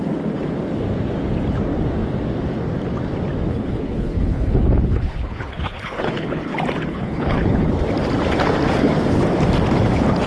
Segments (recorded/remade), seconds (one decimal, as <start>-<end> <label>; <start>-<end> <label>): 0.0-3.5 recorded; 3.5-6.5 remade; 6.5-6.9 recorded; 6.9-7.7 remade; 7.7-10.3 recorded